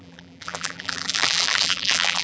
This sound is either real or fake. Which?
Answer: fake